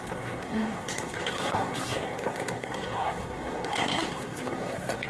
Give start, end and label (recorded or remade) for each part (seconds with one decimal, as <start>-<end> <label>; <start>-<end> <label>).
0.0-5.1 remade